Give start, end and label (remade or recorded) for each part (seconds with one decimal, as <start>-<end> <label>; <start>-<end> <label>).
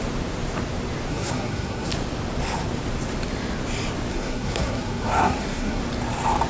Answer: 0.0-1.1 recorded; 1.1-1.9 remade; 1.9-4.1 recorded; 4.1-5.8 remade; 5.8-6.5 recorded